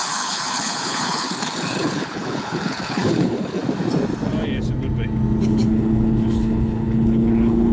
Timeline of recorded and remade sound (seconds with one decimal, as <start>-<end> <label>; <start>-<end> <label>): 0.0-3.6 remade; 3.6-5.4 recorded; 5.4-7.7 remade